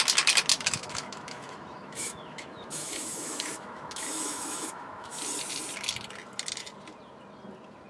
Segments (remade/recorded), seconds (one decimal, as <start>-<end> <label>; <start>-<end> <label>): 0.0-0.5 recorded; 0.5-5.2 remade; 5.2-7.9 recorded